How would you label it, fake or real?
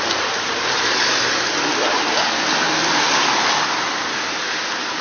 real